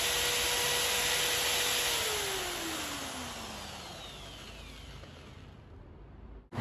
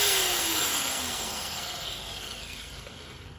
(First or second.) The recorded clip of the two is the first